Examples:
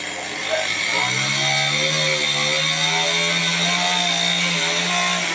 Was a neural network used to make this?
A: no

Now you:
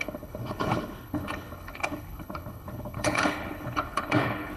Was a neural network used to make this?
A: yes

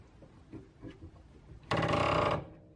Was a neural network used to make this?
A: no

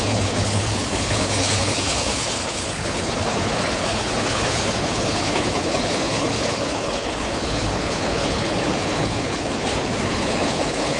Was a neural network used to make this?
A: yes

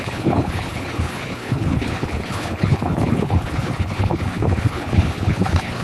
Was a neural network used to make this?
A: yes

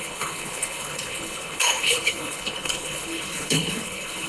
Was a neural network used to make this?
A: yes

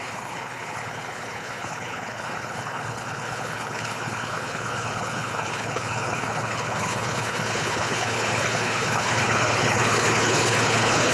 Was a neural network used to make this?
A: yes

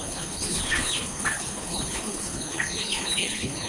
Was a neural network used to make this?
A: yes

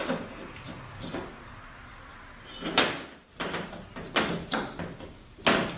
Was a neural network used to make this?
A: no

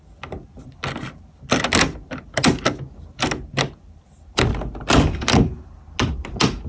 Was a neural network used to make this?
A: no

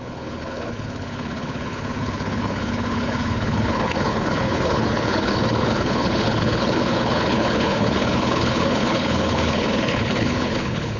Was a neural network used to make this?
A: yes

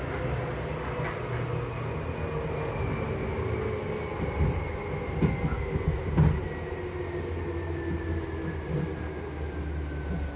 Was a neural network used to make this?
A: no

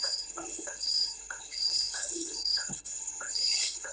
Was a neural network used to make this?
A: yes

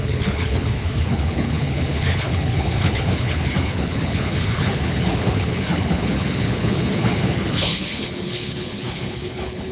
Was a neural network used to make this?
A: yes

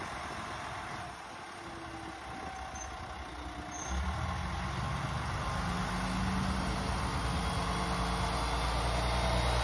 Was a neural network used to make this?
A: no